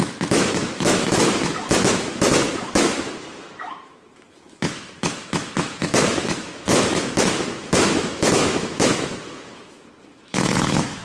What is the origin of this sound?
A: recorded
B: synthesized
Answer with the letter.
B